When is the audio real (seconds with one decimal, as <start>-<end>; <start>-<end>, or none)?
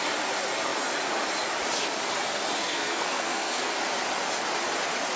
0.0-2.6; 3.7-5.2